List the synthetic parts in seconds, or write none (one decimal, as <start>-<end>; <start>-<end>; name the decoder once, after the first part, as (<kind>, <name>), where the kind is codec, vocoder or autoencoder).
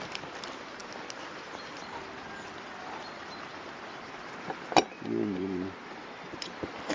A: none